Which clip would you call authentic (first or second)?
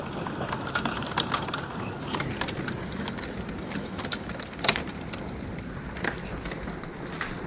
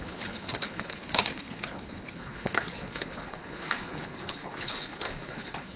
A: first